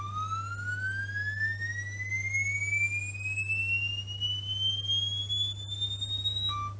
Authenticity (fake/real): real